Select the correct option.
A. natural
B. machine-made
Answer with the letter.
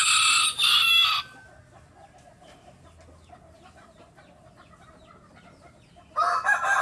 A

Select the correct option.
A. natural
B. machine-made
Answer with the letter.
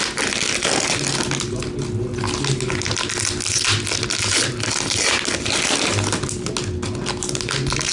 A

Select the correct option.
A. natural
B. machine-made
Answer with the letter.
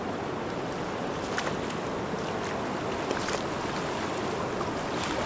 A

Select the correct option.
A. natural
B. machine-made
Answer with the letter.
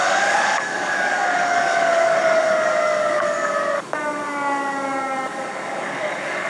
B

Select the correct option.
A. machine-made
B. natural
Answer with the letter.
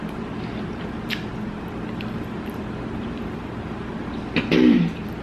B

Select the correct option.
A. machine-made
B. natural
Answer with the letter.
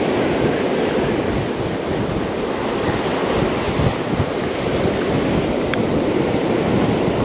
B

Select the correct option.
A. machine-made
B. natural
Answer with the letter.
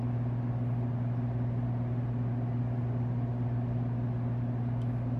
B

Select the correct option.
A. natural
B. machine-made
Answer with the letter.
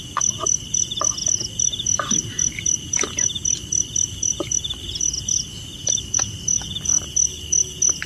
A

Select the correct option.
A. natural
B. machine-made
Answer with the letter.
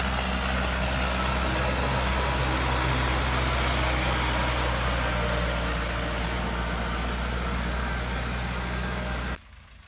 A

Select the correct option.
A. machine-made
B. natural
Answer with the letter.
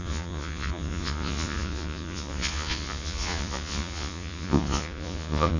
A